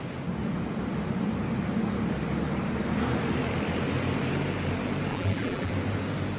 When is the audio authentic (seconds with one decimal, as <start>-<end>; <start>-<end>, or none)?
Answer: 0.0-5.1; 5.7-6.4